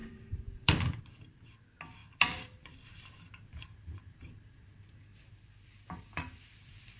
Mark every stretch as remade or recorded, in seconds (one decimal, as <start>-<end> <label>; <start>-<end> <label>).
0.0-1.0 remade; 1.0-2.0 recorded; 2.0-6.2 remade; 6.2-7.0 recorded